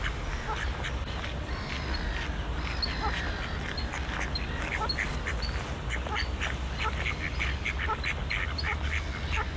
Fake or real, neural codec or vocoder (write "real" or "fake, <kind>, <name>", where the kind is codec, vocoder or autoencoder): real